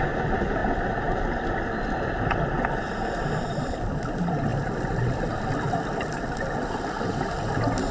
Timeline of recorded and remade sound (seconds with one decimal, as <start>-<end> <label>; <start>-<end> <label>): 0.0-7.9 recorded